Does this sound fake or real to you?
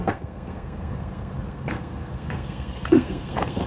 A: fake